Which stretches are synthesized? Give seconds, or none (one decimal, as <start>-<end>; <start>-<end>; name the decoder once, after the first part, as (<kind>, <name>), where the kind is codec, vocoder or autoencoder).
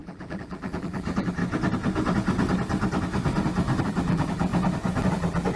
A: 0.0-1.4 (vocoder, BigVGAN v2); 3.8-4.5; 5.1-5.6